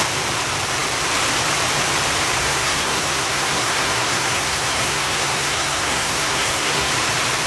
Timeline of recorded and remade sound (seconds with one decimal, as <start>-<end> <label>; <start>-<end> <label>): 0.0-2.4 recorded; 2.4-6.9 remade; 6.9-7.5 recorded